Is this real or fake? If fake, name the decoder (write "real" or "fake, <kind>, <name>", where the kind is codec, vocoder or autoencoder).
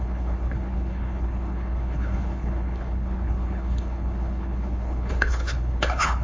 fake, codec, HILCodec